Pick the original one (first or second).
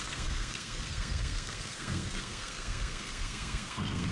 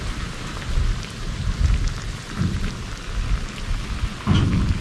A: second